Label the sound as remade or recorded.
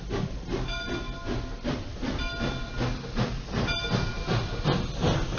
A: recorded